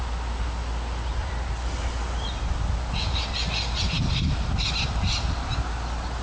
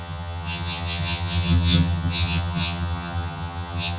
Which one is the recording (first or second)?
first